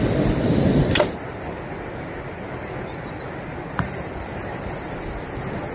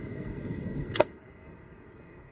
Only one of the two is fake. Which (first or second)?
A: second